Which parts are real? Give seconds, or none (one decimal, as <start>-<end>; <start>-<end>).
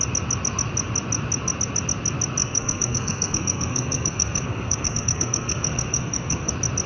0.0-2.4; 6.5-6.9